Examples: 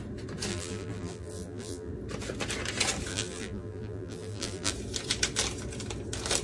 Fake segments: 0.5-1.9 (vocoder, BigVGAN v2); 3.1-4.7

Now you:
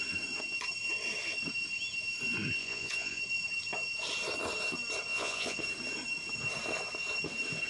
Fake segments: 2.6-3.2 (vocoder, Vocos); 5.1-5.6

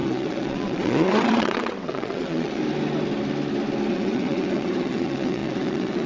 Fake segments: 0.0-2.6 (vocoder, WaveNeXt); 3.9-6.1

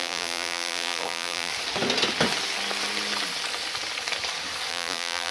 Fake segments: 0.0-1.5 (vocoder, BigVGAN v2); 4.7-5.3

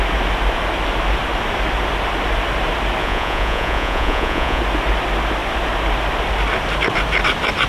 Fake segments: 3.0-4.6 (vocoder, Vocos)

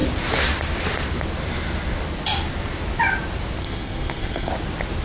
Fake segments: 3.6-4.5 (codec, SNAC)